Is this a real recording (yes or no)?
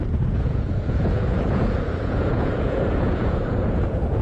no